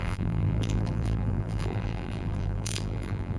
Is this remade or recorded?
remade